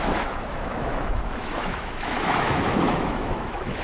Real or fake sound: fake